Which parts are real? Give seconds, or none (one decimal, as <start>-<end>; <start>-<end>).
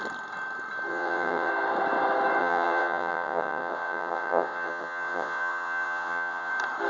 0.0-0.9; 1.5-2.4; 6.5-6.9